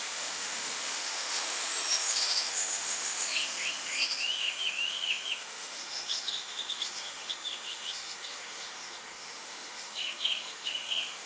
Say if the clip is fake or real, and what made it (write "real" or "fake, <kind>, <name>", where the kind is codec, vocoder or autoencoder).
fake, autoencoder, DAC-VAE